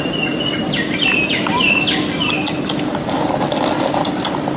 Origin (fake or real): real